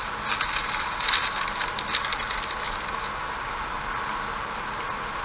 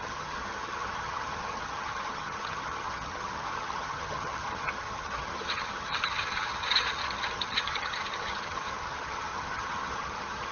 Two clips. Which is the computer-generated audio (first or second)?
second